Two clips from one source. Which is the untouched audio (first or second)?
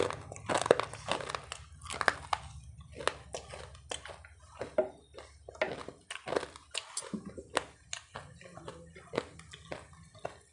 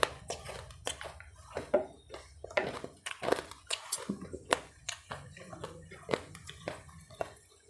first